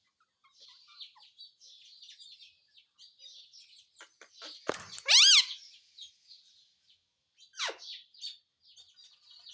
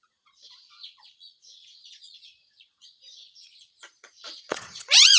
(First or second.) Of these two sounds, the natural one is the first